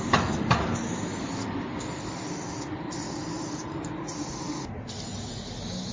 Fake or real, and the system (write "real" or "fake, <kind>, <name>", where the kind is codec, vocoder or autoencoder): real